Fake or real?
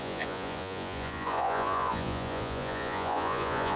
fake